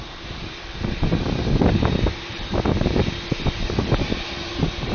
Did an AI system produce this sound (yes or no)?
no